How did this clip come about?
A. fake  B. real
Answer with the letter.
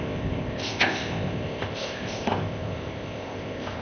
A